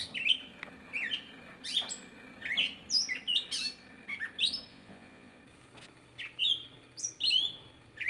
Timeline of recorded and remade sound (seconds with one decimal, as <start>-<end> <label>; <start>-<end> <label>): 0.0-4.7 recorded; 4.7-5.4 remade; 5.4-8.1 recorded